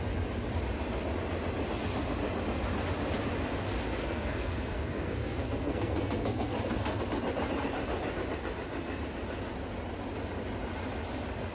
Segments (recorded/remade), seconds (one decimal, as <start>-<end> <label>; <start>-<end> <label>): 0.0-4.0 recorded; 4.0-7.0 remade; 7.0-11.5 recorded